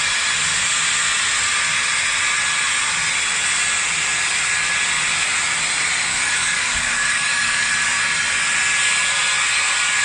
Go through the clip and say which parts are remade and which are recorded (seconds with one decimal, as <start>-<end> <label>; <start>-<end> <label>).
0.0-6.1 recorded; 6.1-7.7 remade; 7.7-10.0 recorded